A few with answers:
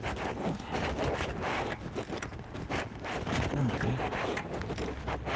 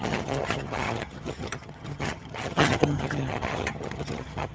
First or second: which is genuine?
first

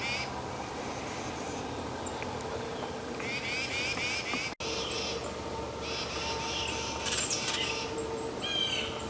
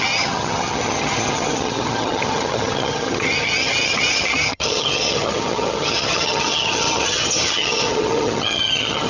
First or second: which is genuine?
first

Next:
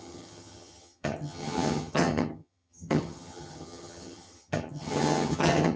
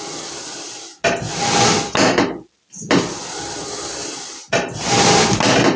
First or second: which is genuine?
second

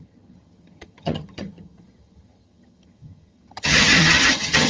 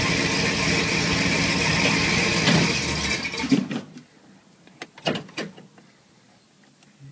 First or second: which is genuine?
second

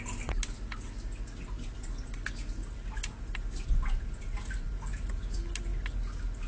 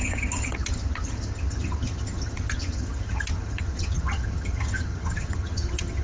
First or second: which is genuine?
first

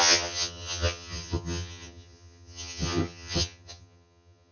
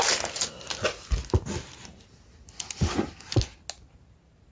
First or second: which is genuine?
second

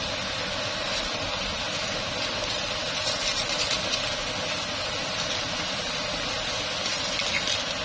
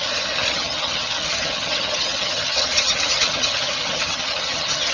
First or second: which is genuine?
first